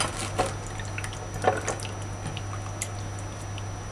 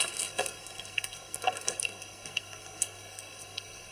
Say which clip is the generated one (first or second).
second